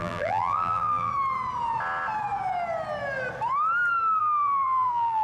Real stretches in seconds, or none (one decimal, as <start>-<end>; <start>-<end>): 1.1-4.2